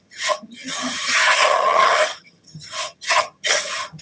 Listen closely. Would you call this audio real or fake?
fake